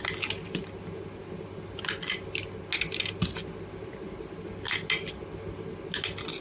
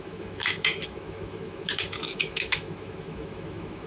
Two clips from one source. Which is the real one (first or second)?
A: first